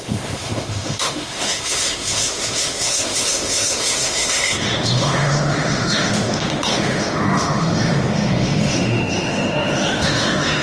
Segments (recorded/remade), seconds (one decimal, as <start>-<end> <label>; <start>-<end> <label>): 0.0-10.6 remade